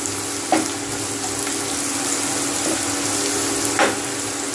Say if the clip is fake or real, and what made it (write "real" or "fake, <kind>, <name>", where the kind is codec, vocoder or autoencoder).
real